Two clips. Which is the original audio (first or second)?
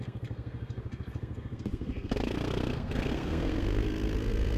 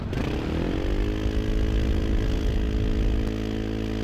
second